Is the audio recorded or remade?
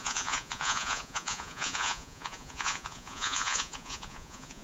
remade